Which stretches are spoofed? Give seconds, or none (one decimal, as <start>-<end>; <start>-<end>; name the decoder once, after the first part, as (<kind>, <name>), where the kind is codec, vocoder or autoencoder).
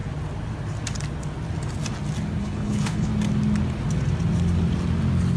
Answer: 2.4-3.1 (codec, HILCodec)